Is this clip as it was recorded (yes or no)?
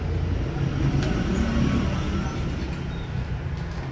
yes